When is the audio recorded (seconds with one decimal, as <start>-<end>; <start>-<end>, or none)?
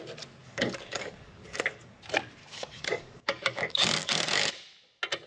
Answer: 0.0-0.4; 1.9-2.4; 4.5-5.3